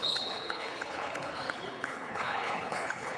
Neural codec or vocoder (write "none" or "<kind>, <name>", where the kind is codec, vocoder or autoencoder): codec, HILCodec